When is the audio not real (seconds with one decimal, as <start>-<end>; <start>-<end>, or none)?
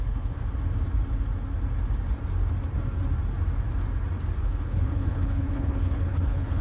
0.0-0.4; 4.4-6.6